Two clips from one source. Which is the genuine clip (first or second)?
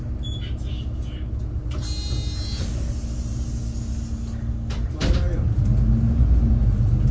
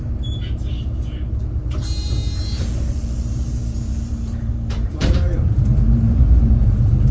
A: first